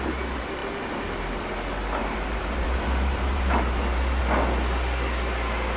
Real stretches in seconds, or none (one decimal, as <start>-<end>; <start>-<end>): 0.0-2.0; 4.2-5.8